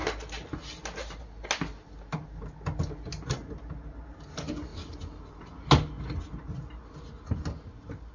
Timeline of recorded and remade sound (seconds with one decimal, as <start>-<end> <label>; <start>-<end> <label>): 0.0-8.1 recorded